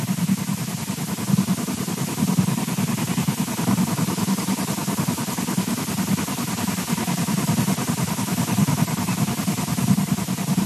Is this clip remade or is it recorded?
recorded